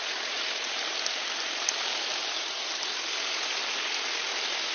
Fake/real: real